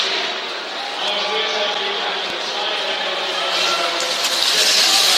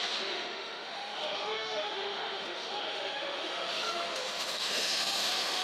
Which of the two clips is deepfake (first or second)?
second